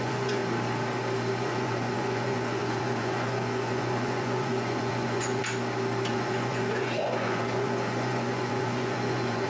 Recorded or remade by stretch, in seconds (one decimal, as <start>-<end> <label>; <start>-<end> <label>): 0.0-0.4 remade; 0.4-1.4 recorded; 1.4-5.4 remade; 5.4-6.1 recorded; 6.1-9.5 remade